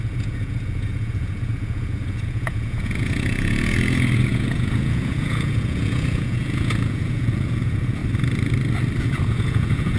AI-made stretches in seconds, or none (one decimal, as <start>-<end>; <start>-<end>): 0.0-8.0; 9.0-10.0